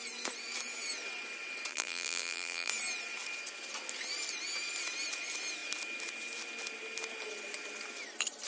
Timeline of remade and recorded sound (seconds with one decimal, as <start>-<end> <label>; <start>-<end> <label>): 0.0-1.7 recorded; 1.7-2.7 remade; 2.7-8.5 recorded